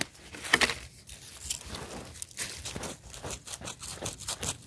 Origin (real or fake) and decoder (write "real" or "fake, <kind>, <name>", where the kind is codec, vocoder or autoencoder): real